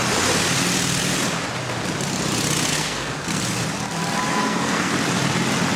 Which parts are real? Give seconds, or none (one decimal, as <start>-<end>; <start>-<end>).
0.0-2.7; 3.4-4.3; 4.9-5.8

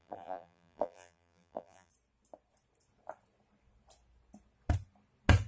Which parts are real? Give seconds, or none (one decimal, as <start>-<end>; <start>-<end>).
1.9-5.5